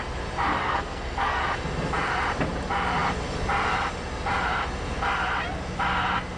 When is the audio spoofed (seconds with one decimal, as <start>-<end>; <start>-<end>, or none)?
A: 0.6-1.4